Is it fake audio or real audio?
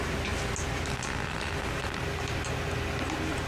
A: real